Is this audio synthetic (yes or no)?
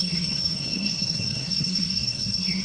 yes